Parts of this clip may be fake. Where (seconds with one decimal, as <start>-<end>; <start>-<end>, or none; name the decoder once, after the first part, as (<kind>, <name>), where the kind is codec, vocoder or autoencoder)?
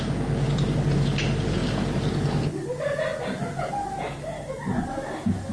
none